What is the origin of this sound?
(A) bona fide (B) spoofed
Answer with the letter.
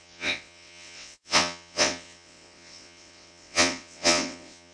B